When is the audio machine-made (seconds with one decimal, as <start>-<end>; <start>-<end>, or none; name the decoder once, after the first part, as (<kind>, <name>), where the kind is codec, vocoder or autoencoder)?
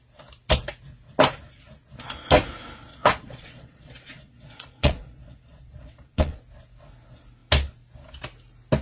2.9-6.4 (vocoder, Vocos)